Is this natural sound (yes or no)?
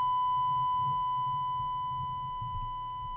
yes